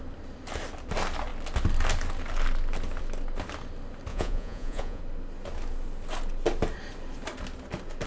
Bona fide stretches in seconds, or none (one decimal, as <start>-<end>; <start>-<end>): 0.0-4.1; 5.0-8.1